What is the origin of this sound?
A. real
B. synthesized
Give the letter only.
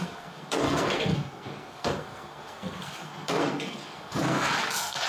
B